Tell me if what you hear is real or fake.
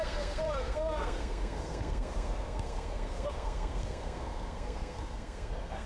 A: fake